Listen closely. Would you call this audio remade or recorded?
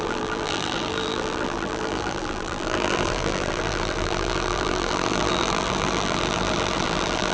remade